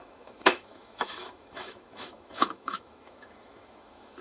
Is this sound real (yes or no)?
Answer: no